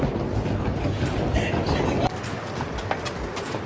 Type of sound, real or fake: real